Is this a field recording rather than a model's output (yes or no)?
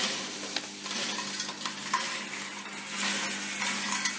yes